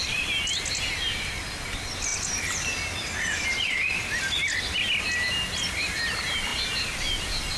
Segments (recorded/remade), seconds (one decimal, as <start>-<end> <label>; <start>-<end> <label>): 0.0-7.6 recorded